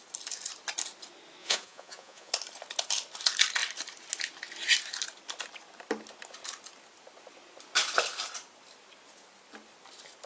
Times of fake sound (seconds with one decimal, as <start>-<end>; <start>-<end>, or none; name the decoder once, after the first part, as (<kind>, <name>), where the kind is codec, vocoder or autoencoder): 1.4-2.3 (vocoder, Vocos)

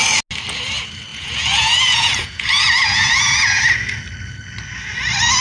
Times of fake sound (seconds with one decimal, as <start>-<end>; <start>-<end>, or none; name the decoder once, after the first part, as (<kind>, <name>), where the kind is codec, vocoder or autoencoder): 1.1-3.6 (vocoder, Vocos)

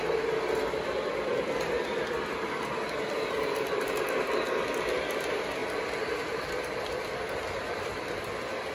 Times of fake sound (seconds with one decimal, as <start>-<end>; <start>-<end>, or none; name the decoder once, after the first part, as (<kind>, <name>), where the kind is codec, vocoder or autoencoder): none

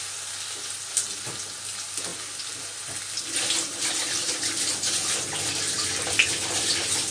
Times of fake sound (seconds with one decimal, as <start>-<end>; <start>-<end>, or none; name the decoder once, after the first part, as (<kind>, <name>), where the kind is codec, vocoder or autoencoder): none